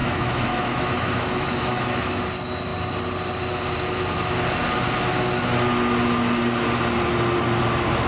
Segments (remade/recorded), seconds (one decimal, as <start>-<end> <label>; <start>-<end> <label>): 0.0-2.2 remade; 2.2-8.1 recorded